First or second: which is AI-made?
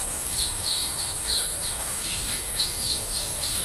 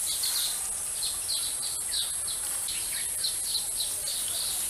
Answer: first